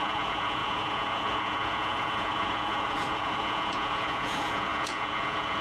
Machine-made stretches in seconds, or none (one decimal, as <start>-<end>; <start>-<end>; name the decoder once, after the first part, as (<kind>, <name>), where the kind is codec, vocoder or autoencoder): 0.0-5.6 (vocoder, Vocos)